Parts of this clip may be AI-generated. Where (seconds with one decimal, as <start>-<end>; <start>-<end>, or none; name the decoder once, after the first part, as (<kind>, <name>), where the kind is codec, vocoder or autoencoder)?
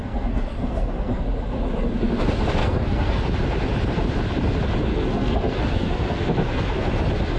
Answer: 0.0-1.2 (codec, SNAC); 2.6-3.2; 4.9-6.9